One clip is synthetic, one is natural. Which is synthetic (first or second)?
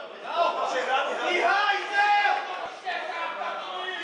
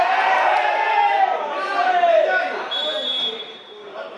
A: second